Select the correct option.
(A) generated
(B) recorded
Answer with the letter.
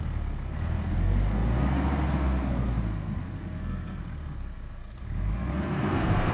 A